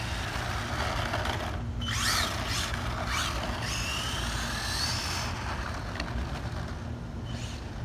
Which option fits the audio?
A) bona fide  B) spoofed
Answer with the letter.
A